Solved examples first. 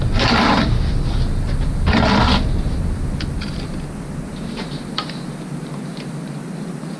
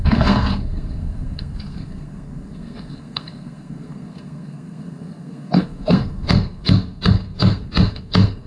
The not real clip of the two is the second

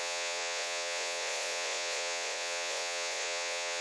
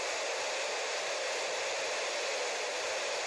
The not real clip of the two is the first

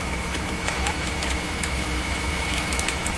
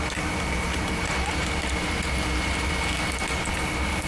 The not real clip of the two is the first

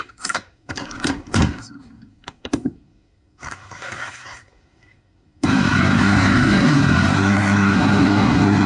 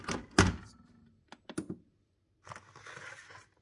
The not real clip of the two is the first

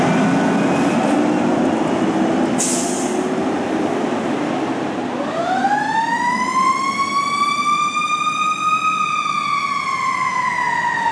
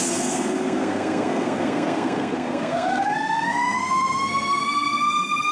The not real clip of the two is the second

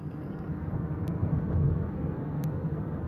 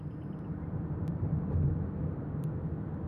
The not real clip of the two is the first